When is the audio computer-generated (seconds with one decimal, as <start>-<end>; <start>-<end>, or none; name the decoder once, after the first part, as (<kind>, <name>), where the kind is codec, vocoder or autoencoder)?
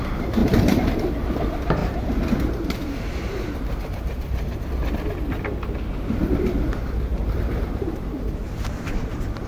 0.4-1.1 (vocoder, BigVGAN v2); 1.8-4.7; 7.1-9.5